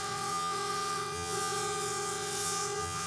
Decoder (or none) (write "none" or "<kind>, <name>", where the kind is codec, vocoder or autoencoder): vocoder, WaveNeXt